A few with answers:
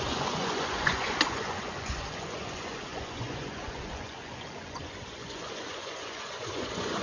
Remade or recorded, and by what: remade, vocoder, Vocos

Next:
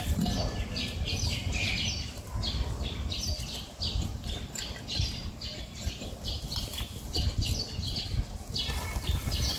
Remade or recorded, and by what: recorded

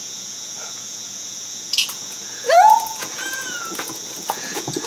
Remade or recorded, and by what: remade, vocoder, Vocos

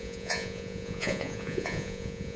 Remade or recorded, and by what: remade, vocoder, Vocos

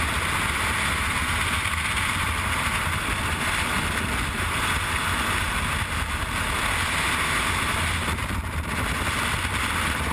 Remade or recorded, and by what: recorded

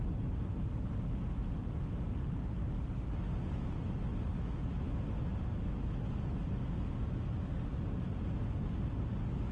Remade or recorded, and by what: recorded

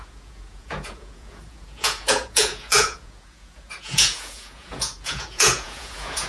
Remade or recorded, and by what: remade, vocoder, Vocos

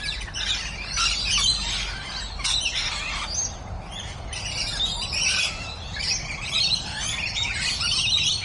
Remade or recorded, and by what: recorded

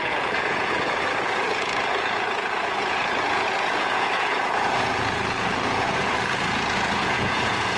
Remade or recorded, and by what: remade, vocoder, Vocos